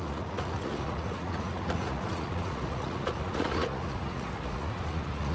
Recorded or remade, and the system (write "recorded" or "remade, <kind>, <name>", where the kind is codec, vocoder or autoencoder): remade, vocoder, Vocos